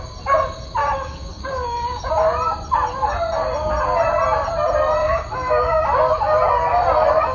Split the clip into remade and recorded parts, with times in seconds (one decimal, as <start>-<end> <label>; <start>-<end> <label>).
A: 0.0-0.8 recorded; 0.8-2.1 remade; 2.1-5.0 recorded; 5.0-5.8 remade; 5.8-7.3 recorded